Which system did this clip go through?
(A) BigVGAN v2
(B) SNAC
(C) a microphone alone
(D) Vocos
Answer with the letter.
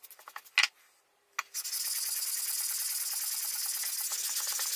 C